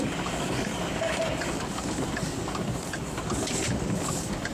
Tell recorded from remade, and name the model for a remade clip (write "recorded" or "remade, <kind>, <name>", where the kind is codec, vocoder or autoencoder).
remade, codec, DAC